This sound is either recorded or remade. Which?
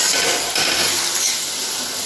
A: recorded